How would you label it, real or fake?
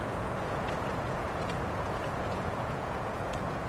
fake